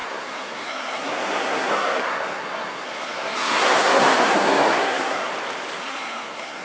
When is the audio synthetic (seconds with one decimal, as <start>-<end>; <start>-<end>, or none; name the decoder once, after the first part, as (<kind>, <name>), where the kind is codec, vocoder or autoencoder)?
0.0-5.3 (codec, SNAC); 5.8-6.6